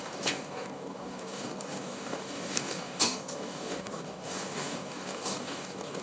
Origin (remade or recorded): remade